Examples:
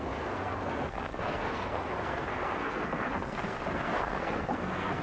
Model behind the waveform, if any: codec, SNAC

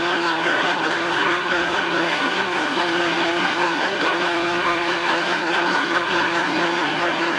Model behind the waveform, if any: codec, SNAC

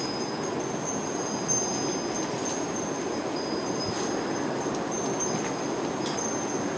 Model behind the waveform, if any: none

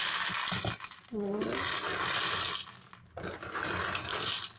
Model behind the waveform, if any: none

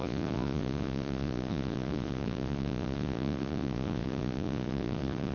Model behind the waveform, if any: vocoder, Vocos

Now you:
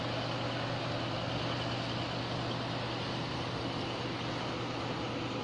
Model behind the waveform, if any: none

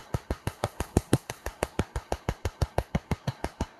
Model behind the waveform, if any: codec, SNAC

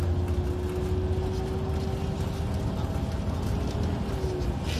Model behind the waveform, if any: none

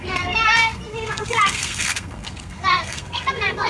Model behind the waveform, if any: codec, SNAC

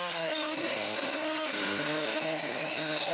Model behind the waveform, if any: codec, SNAC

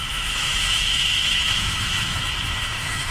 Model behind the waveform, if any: autoencoder, DAC-VAE